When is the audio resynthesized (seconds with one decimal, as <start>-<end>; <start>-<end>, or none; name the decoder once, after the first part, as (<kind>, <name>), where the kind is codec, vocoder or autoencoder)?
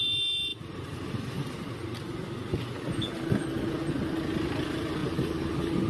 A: none